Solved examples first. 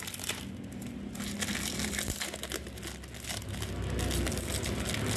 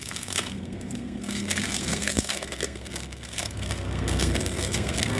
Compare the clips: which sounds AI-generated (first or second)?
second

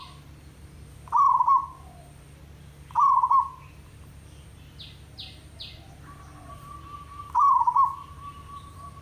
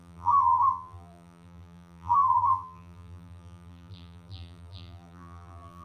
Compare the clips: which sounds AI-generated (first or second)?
second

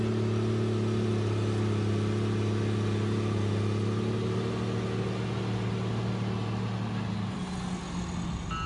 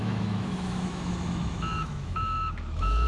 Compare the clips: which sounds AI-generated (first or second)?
second